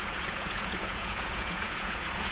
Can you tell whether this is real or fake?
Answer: fake